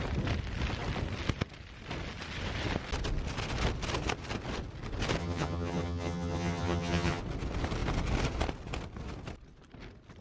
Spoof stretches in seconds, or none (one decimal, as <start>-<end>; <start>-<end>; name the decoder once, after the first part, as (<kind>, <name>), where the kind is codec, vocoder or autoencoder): 5.2-7.2 (vocoder, HiFi-GAN)